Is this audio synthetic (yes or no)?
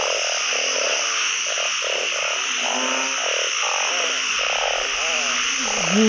no